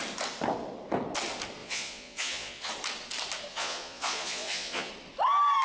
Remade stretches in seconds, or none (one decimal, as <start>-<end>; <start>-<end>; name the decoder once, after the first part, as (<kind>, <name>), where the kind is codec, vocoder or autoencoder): 1.6-2.7 (vocoder, Vocos); 3.5-4.9